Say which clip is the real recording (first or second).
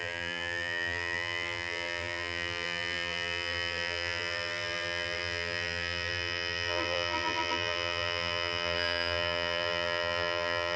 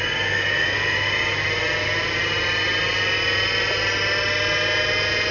second